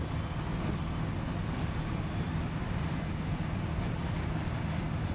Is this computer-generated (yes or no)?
no